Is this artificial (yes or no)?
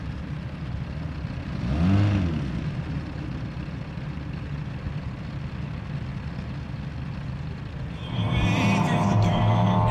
no